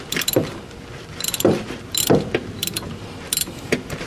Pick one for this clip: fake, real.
real